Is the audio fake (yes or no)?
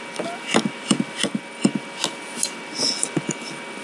no